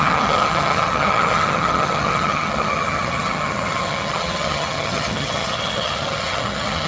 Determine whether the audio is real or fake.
fake